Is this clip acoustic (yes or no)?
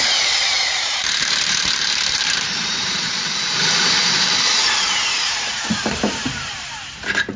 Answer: no